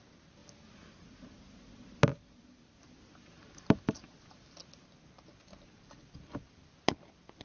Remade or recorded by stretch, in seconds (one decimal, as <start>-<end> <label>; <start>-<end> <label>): 0.0-7.4 recorded